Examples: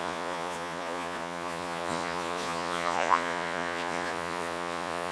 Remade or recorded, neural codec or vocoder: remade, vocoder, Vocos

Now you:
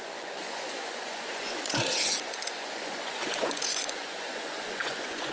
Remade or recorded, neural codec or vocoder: remade, vocoder, Vocos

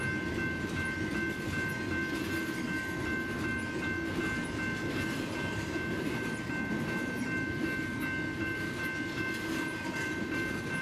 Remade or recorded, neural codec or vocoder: recorded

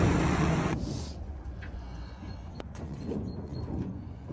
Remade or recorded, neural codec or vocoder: remade, vocoder, Vocos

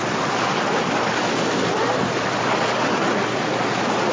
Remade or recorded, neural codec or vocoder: recorded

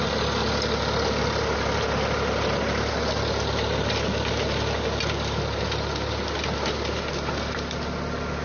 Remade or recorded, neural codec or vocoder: recorded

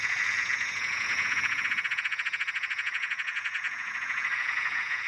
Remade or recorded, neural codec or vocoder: remade, vocoder, Vocos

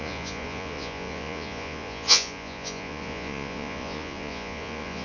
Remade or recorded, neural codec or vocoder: remade, vocoder, Vocos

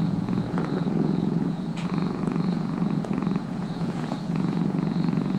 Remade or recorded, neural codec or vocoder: remade, vocoder, Vocos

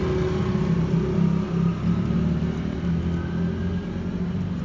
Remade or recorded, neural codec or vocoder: recorded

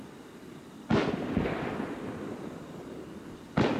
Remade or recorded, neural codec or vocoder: recorded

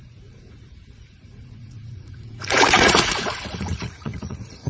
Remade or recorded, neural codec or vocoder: remade, vocoder, Vocos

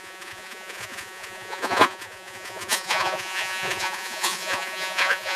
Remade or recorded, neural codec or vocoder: remade, vocoder, Vocos